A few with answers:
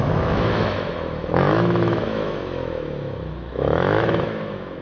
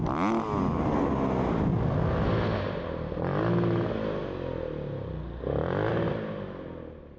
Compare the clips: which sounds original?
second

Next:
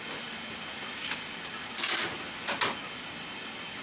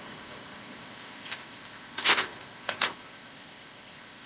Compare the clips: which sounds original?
first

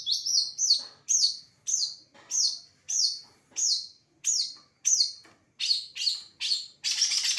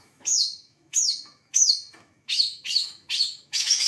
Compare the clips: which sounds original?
first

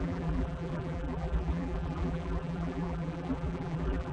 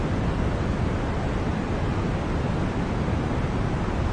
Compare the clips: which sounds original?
second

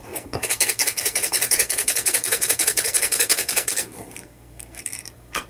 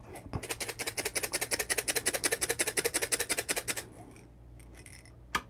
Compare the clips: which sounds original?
second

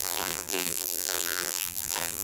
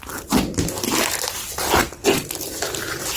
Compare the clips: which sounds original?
second